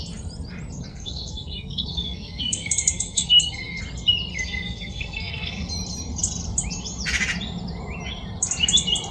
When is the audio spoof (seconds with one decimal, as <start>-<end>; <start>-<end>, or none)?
0.9-3.8; 4.3-5.7